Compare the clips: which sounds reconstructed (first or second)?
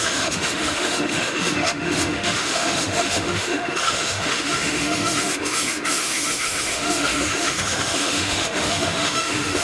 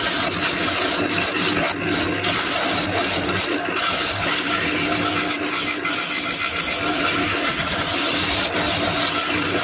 first